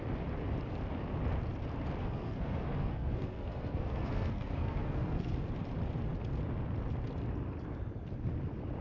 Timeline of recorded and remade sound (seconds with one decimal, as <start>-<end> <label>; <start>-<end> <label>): 0.0-2.0 recorded; 2.0-5.5 remade; 5.5-8.8 recorded